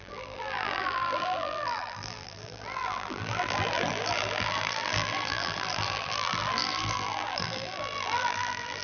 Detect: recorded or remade remade